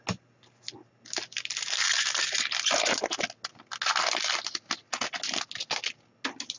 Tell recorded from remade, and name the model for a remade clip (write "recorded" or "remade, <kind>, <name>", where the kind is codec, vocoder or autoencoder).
recorded